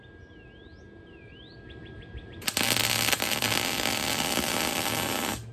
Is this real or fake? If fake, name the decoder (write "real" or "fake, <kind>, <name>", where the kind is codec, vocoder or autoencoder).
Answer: real